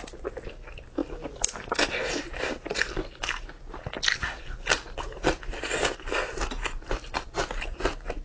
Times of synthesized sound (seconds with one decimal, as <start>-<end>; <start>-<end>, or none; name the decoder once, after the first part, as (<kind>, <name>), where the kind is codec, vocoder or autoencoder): none